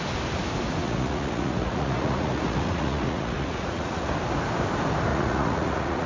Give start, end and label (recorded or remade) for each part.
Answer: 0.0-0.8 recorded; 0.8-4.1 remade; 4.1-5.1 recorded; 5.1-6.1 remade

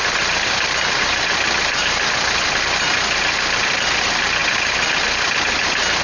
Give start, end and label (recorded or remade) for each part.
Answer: 0.0-6.0 recorded

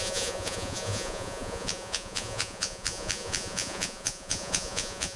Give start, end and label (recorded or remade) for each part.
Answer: 0.0-5.2 remade

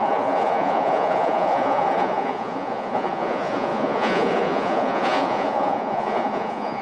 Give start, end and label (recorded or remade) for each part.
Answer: 0.0-6.8 remade

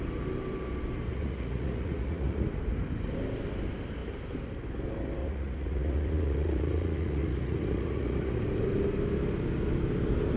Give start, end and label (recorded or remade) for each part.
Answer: 0.0-1.1 recorded; 1.1-2.6 remade; 2.6-5.2 recorded; 5.2-8.4 remade; 8.4-10.4 recorded

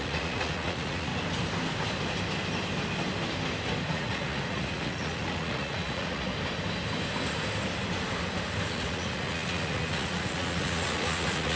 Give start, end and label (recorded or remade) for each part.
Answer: 0.0-1.1 remade; 1.1-3.9 recorded; 3.9-6.3 remade; 6.3-8.7 recorded; 8.7-11.6 remade

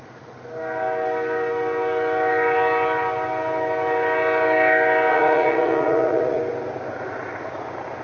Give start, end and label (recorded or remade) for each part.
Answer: 0.0-5.1 recorded; 5.1-6.4 remade; 6.4-8.0 recorded

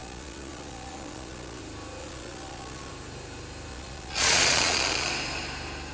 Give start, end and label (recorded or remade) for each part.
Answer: 0.0-1.6 remade; 1.6-2.0 recorded; 2.0-2.9 remade; 2.9-3.7 recorded; 3.7-5.1 remade; 5.1-5.9 recorded